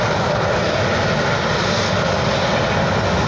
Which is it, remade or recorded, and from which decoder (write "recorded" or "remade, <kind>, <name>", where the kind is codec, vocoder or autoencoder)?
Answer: recorded